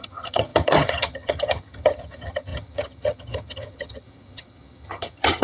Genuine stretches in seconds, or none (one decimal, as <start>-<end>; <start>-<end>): none